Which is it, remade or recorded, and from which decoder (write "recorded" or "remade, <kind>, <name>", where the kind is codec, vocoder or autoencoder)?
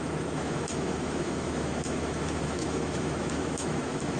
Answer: remade, autoencoder, DAC-VAE